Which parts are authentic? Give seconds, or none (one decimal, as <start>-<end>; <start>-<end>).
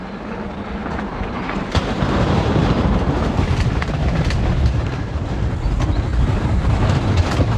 0.0-0.8; 5.4-6.1; 6.7-7.6